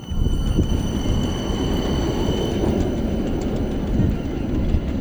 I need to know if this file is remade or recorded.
remade